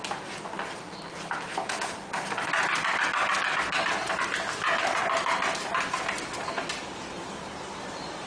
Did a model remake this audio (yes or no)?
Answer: no